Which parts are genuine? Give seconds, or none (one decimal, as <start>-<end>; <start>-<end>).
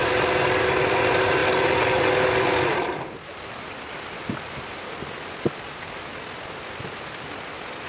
0.0-7.9